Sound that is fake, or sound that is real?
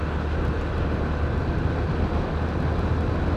real